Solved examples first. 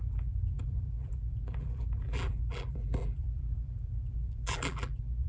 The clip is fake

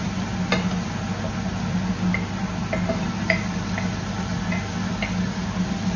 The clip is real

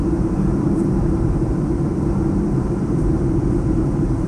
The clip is fake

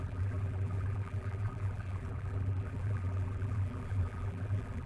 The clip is fake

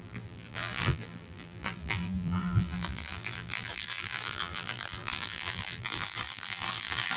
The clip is fake